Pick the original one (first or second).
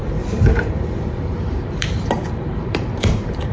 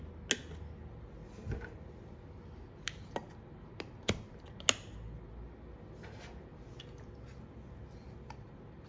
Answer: second